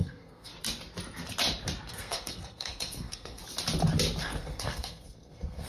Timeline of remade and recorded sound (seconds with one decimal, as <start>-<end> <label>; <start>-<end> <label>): 0.0-0.5 remade; 0.5-1.9 recorded; 1.9-3.4 remade; 3.4-4.2 recorded; 4.2-5.7 remade